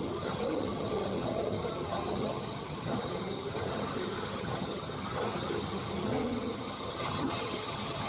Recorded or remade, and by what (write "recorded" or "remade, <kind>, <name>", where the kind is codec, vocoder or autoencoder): remade, vocoder, HiFi-GAN